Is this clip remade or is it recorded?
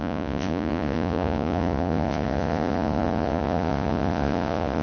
remade